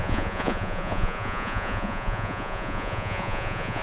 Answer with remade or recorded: remade